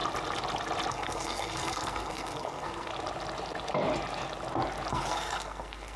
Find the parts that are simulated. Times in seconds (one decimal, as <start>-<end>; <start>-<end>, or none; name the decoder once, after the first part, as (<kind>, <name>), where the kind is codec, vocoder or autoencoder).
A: 0.9-2.9 (codec, SNAC); 4.9-6.0